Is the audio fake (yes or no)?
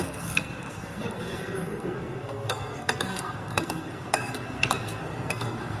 yes